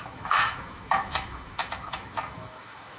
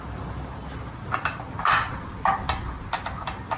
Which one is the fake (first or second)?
first